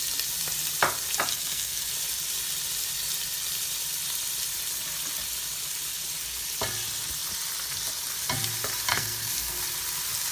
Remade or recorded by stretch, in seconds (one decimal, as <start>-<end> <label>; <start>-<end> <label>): 0.0-1.3 recorded; 1.3-1.9 remade; 1.9-8.9 recorded; 8.9-9.6 remade; 9.6-10.3 recorded

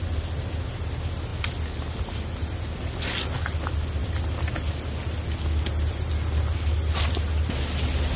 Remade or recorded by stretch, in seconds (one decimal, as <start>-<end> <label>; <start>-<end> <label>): 0.0-8.2 recorded

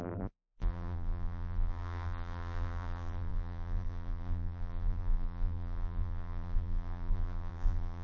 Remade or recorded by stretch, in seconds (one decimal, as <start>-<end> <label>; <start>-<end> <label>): 0.0-8.0 remade

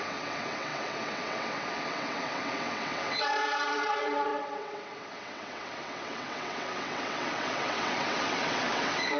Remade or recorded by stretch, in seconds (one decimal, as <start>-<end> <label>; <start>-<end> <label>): 0.0-9.2 remade